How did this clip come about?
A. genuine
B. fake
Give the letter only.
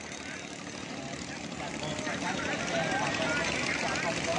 A